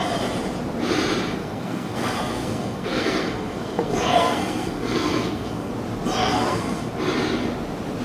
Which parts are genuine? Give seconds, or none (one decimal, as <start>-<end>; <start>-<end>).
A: 0.0-1.4; 5.7-6.2; 6.9-8.0